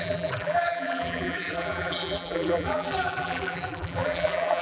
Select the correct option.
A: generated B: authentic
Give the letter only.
A